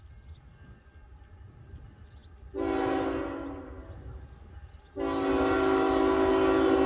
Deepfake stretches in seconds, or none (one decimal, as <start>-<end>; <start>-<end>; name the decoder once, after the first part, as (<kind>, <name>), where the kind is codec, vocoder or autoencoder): none